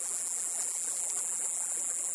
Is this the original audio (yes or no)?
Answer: no